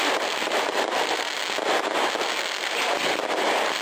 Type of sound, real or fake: real